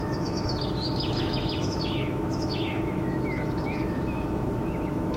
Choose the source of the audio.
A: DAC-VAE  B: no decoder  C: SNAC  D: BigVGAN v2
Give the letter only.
A